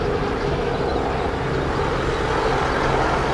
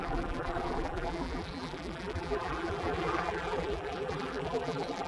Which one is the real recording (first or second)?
first